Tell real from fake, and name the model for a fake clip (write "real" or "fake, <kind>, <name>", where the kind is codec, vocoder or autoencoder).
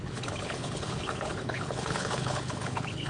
fake, codec, HILCodec